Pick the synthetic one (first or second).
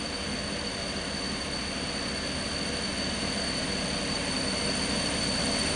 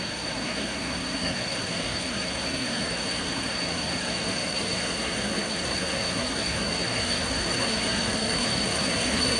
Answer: second